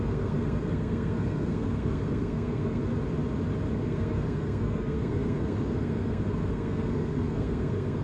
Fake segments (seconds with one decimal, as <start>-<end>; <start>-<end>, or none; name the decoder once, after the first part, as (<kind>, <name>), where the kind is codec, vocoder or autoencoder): 0.0-2.8 (codec, SNAC); 3.7-8.0